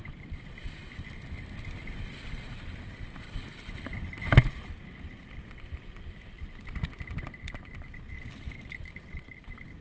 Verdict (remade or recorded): recorded